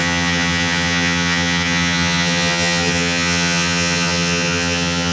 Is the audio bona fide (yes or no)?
no